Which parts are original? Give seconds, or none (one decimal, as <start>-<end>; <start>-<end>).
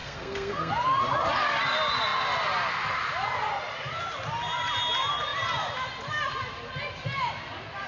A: 0.7-7.9